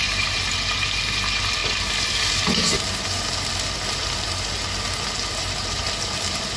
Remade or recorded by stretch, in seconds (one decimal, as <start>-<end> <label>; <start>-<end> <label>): 0.0-6.6 recorded